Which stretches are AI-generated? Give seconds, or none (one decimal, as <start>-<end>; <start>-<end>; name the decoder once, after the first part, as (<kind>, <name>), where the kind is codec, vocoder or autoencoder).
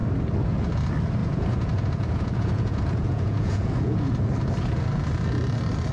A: 1.2-4.1 (vocoder, Vocos)